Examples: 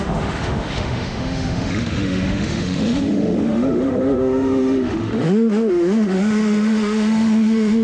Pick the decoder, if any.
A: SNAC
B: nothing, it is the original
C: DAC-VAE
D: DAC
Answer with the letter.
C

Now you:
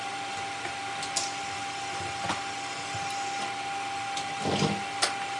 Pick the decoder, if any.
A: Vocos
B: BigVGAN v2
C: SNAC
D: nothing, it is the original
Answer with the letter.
D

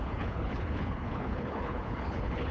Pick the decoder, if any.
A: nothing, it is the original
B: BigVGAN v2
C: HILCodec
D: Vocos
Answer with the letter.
C